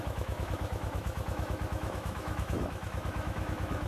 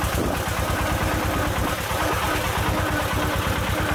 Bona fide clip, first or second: second